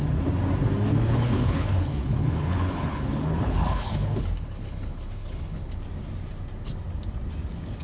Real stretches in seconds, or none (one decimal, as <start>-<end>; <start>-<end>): 0.0-1.0; 5.7-7.8